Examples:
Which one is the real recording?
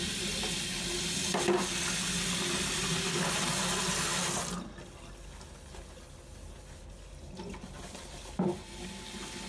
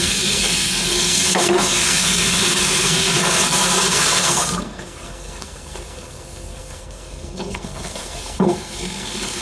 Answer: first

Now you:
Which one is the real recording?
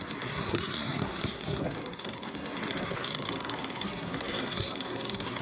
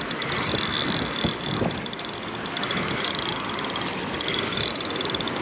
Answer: second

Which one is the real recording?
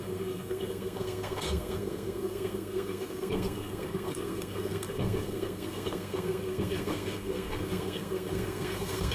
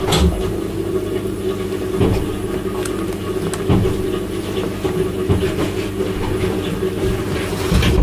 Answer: second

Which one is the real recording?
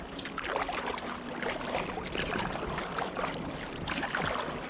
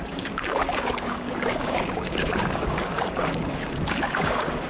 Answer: first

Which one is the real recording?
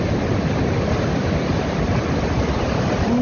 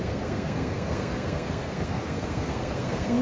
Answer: first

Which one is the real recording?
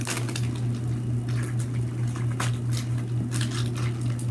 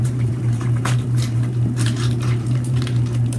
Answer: first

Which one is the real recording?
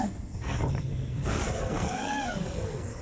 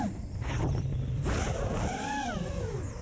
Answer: second